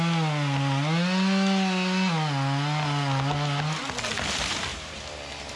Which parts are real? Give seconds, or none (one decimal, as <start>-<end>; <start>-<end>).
0.0-4.7